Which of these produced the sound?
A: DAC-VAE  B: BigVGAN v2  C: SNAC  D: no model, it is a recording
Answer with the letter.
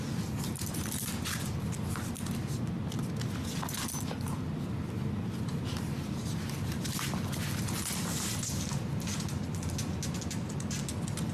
D